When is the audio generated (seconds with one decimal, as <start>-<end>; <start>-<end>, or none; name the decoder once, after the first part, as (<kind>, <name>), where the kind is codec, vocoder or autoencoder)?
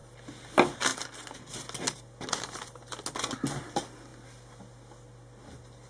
none